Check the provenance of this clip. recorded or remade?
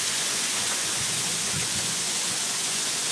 remade